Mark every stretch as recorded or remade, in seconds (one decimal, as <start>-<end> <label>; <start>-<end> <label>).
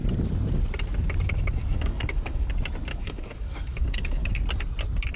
0.0-1.7 recorded; 1.7-2.5 remade; 2.5-2.9 recorded; 2.9-4.3 remade; 4.3-5.2 recorded